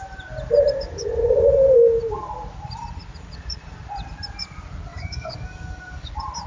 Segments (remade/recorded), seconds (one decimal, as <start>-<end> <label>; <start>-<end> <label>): 0.0-4.9 recorded; 4.9-6.1 remade; 6.1-6.5 recorded